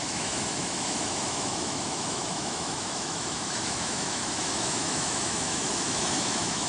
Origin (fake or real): fake